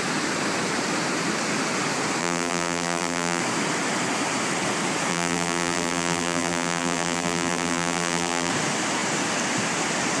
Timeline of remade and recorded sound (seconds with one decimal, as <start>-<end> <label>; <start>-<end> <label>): 0.0-2.2 recorded; 2.2-3.4 remade; 3.4-5.1 recorded; 5.1-8.5 remade; 8.5-10.2 recorded